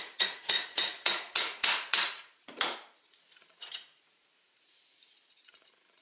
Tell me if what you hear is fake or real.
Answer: fake